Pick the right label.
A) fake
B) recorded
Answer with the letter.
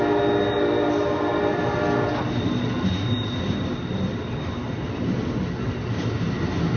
B